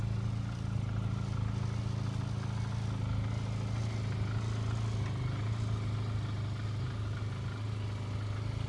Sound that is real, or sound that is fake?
real